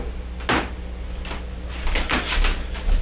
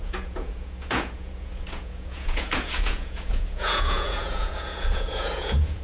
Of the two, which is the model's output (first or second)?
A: second